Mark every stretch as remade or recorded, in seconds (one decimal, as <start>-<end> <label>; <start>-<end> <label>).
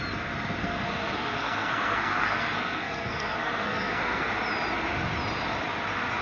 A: 0.0-0.6 recorded; 0.6-4.3 remade; 4.3-6.2 recorded